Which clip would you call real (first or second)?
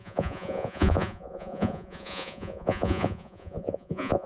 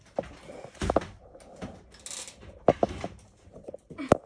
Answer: second